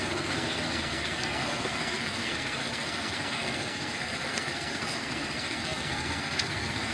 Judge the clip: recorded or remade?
remade